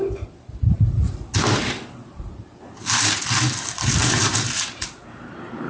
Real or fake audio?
fake